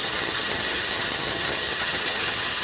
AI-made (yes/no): yes